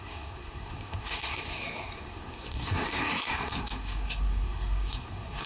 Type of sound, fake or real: fake